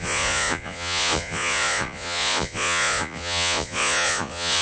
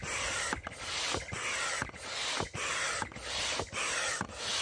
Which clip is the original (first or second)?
second